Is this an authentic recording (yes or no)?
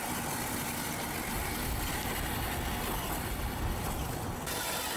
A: yes